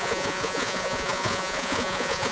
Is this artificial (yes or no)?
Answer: yes